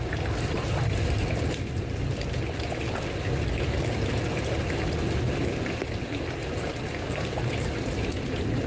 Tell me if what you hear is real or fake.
real